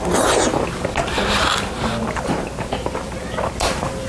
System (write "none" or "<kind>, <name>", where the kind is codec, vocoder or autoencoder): none